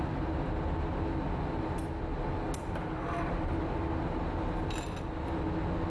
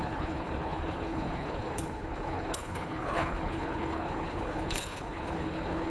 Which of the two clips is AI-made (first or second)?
second